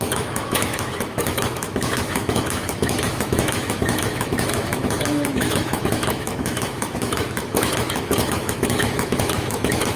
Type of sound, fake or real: fake